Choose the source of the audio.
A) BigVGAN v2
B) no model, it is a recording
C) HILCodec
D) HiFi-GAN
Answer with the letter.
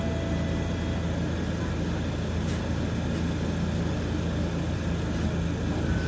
B